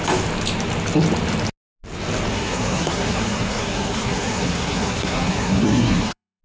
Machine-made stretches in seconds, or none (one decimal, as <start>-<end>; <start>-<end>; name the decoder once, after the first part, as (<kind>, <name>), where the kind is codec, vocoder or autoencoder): 2.3-6.4 (codec, SNAC)